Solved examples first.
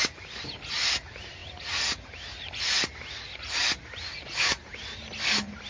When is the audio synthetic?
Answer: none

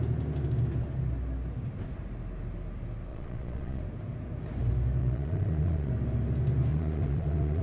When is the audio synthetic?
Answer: 3.1-3.8 (vocoder, Vocos); 5.0-5.9; 6.7-7.6

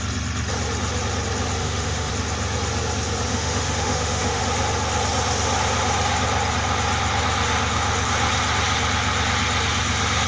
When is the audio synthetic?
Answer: 1.6-2.1 (autoencoder, DAC-VAE); 3.3-4.4

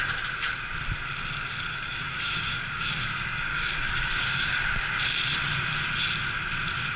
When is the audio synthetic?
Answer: 1.7-4.5 (codec, DAC)

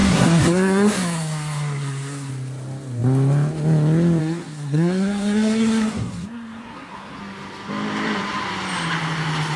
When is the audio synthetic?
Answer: 0.0-2.3 (codec, SNAC); 4.2-7.2

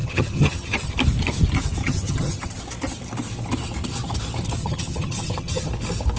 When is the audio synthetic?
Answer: 0.0-0.9 (vocoder, HiFi-GAN); 1.8-2.6; 4.6-5.7

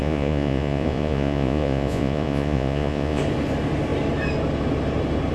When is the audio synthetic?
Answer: 0.0-3.2 (vocoder, Vocos)